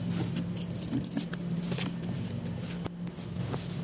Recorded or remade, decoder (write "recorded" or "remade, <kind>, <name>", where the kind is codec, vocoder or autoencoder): recorded